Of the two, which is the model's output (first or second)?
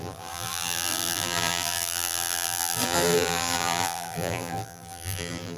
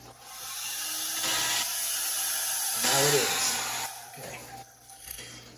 first